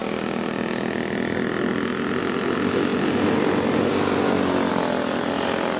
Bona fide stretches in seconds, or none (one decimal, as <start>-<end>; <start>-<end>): 0.0-5.8